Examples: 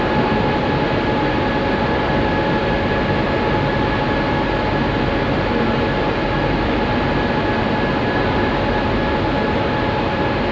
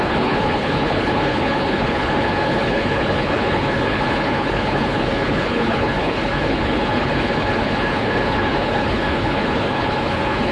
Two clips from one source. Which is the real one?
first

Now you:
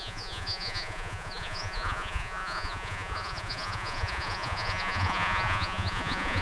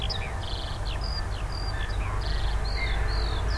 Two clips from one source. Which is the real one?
second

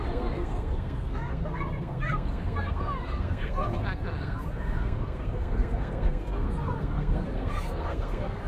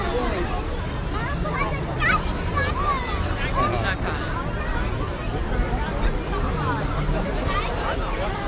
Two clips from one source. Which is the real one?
second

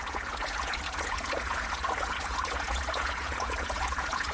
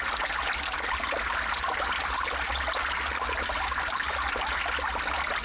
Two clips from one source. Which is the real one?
second